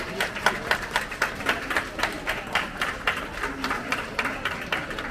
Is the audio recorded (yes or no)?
no